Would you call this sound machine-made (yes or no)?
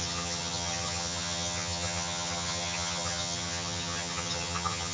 yes